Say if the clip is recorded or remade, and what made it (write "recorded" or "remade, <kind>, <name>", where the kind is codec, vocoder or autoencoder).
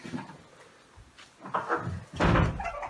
recorded